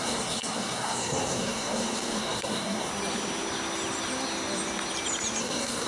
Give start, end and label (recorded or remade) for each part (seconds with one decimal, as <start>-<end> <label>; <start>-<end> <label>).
0.0-2.9 remade; 2.9-5.4 recorded; 5.4-5.9 remade